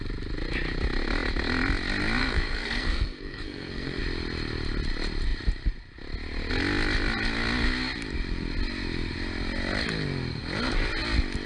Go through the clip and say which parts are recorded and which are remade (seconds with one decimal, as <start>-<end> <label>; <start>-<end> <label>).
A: 0.0-2.2 recorded; 2.2-4.0 remade; 4.0-11.5 recorded

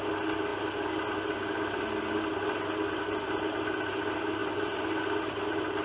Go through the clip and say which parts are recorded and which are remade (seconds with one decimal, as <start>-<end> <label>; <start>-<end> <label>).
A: 0.0-5.8 recorded

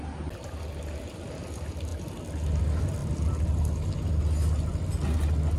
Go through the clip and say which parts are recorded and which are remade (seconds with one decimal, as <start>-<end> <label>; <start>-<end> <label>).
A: 0.0-5.6 recorded

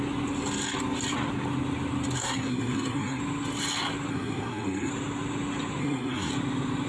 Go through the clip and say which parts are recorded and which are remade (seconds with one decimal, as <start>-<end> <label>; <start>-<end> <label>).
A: 0.0-2.2 recorded; 2.2-3.2 remade; 3.2-4.1 recorded; 4.1-4.9 remade; 4.9-5.8 recorded; 5.8-6.3 remade; 6.3-6.9 recorded